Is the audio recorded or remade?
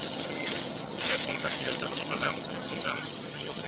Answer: remade